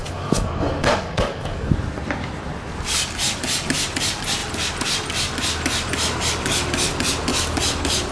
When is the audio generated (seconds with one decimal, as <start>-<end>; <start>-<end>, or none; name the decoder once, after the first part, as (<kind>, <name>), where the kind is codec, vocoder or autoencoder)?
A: 0.0-1.7 (codec, DAC)